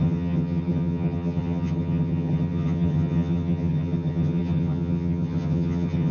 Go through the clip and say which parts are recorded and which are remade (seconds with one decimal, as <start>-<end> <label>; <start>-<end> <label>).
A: 0.0-6.1 remade